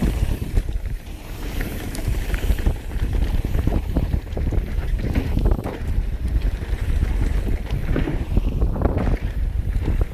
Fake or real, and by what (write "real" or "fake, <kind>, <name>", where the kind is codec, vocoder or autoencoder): fake, vocoder, BigVGAN v2